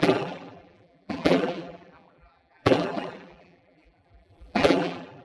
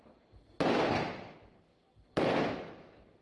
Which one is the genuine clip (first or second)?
second